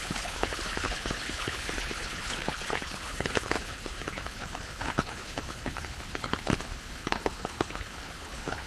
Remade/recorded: remade